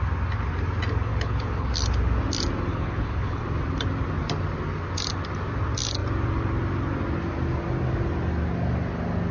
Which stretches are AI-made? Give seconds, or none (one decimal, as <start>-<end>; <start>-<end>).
1.1-1.7; 2.7-3.4